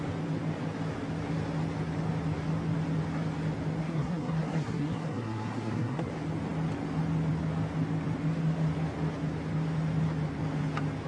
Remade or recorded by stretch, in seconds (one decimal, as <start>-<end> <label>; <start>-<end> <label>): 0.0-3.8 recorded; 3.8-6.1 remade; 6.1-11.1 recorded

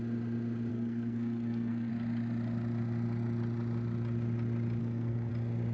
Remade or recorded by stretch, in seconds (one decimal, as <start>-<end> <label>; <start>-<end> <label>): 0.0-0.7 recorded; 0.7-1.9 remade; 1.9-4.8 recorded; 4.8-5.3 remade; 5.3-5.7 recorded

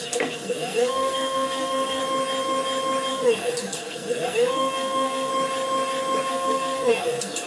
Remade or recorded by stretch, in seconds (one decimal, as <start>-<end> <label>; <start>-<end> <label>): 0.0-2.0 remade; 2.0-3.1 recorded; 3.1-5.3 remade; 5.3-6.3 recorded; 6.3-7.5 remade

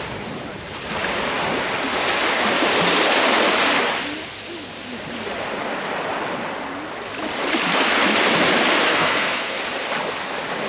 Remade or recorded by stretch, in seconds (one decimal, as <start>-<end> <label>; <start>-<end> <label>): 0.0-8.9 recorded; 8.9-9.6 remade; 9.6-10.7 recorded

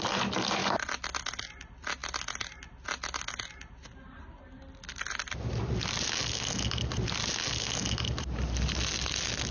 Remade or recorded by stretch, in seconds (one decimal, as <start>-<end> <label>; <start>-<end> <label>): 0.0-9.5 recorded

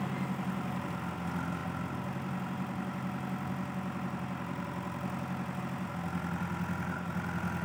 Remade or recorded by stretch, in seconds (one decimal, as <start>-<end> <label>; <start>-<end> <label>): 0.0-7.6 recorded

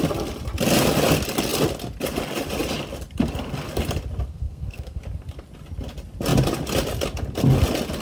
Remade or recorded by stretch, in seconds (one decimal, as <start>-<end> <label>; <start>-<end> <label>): 0.0-4.3 recorded; 4.3-5.0 remade; 5.0-8.0 recorded

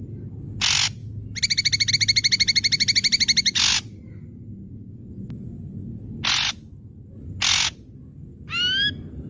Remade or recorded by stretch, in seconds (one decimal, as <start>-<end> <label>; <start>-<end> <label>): 0.0-9.3 recorded